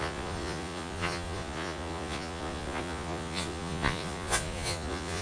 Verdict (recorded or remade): remade